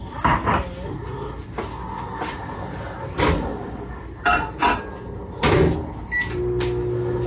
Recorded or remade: recorded